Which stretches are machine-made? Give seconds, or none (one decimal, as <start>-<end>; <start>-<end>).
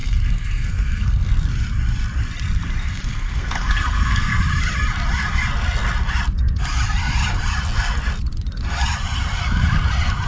0.0-1.3; 2.8-4.4